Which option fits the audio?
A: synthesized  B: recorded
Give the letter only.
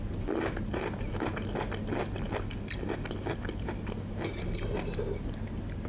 B